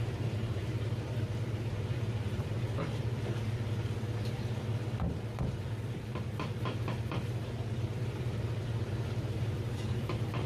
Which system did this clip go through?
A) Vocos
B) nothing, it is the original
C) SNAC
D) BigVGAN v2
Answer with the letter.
D